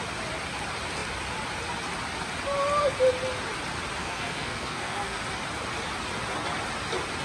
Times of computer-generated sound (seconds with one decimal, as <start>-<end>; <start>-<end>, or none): 4.0-5.2